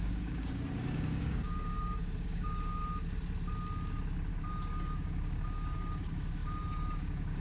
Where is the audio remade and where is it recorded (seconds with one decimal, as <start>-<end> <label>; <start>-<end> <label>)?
0.0-2.8 remade; 2.8-4.3 recorded; 4.3-7.4 remade